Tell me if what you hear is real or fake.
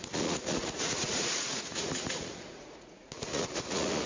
fake